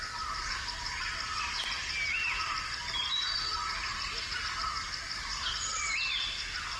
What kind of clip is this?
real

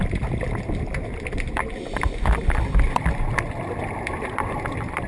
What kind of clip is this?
real